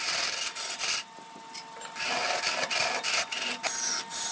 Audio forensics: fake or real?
real